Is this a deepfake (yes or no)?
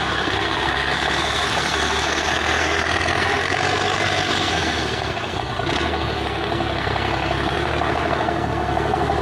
yes